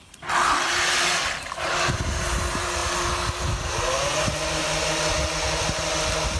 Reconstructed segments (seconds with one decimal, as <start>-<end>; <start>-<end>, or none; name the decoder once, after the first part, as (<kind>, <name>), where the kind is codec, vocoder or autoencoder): none